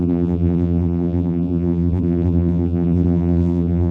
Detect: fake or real fake